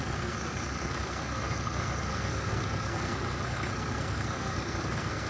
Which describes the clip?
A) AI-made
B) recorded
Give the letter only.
A